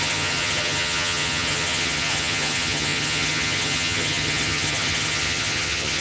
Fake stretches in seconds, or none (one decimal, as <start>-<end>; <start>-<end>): 0.0-6.0